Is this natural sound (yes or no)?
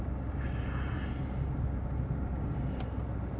yes